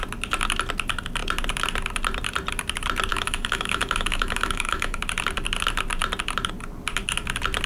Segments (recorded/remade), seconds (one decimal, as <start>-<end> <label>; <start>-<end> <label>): 0.0-3.1 recorded; 3.1-5.0 remade; 5.0-7.7 recorded